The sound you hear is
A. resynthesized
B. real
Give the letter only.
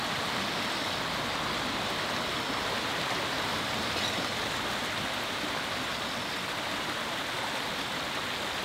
B